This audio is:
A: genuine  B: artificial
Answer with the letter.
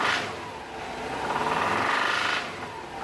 A